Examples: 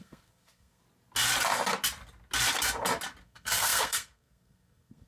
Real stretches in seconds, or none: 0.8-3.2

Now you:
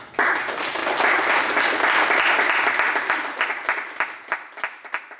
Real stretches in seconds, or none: 0.0-5.2

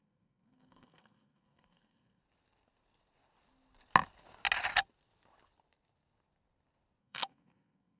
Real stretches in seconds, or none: 2.2-7.0

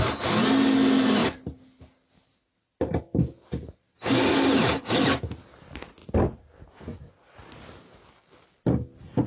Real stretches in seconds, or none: 0.0-9.3

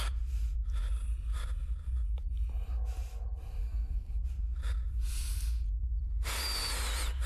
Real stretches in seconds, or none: 0.0-3.6; 4.1-7.3

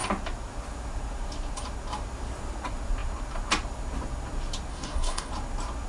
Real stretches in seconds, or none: 0.0-4.7; 5.3-5.9

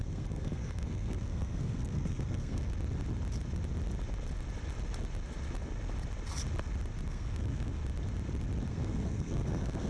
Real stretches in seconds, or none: 2.7-7.1; 7.8-8.7